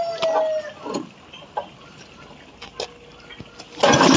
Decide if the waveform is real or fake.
real